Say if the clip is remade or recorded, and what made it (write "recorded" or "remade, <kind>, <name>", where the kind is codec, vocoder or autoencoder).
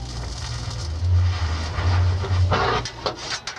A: recorded